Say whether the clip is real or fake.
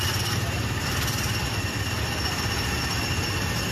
real